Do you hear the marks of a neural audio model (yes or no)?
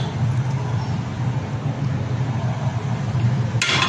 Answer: no